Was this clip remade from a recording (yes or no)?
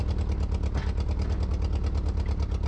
no